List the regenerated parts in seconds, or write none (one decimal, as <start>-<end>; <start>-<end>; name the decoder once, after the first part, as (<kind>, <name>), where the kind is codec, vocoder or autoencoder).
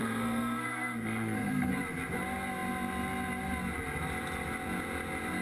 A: 0.0-1.7 (codec, SNAC)